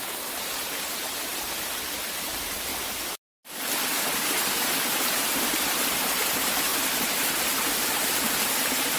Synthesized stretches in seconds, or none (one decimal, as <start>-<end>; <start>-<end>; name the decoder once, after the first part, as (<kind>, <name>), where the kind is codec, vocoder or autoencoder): 0.0-2.7 (vocoder, BigVGAN v2); 5.0-9.0